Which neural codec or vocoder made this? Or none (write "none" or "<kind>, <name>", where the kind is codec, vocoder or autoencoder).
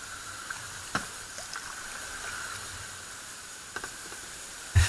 none